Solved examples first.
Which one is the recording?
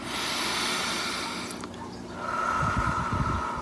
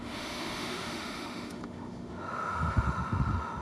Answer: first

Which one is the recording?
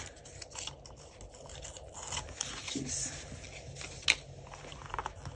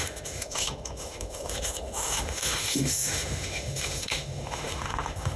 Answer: first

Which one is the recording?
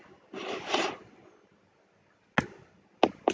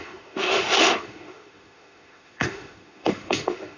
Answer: first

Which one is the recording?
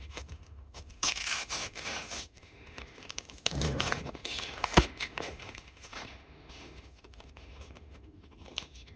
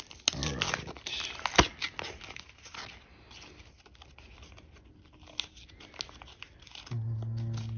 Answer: second